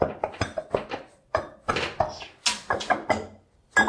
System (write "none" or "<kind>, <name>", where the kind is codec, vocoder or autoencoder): none